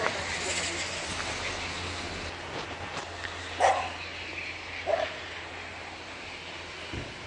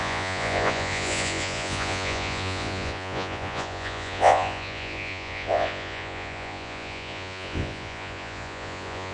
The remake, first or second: second